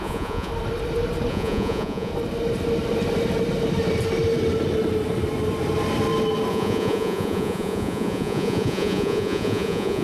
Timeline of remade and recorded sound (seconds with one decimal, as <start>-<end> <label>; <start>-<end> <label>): 0.0-0.5 remade; 0.5-1.3 recorded; 1.3-2.1 remade; 2.1-6.5 recorded; 6.5-10.0 remade